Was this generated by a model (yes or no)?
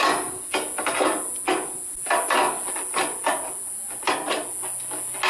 no